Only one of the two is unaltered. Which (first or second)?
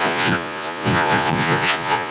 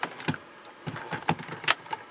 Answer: second